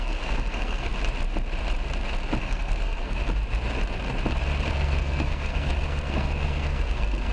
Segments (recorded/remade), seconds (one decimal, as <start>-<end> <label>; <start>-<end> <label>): 0.0-0.9 remade; 0.9-2.4 recorded; 2.4-3.2 remade; 3.2-4.7 recorded; 4.7-7.3 remade